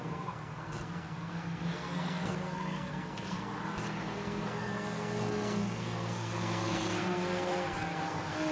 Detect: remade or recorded remade